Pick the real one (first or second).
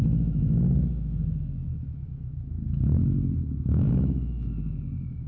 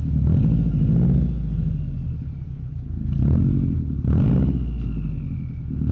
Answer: second